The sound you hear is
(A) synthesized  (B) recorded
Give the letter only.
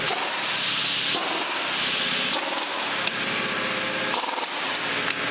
B